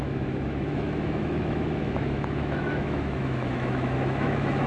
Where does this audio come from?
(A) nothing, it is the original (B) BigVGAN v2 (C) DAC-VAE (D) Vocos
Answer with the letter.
C